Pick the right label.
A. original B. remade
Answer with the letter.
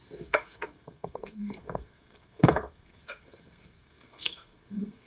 B